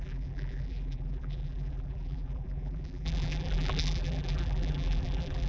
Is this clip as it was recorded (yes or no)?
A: no